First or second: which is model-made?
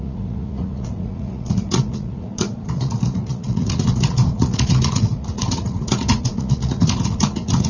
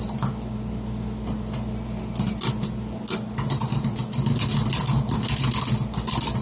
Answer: first